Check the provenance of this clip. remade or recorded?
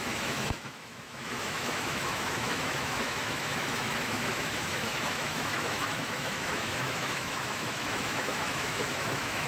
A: remade